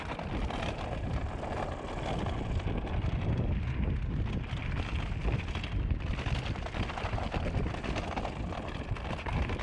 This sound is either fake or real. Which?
real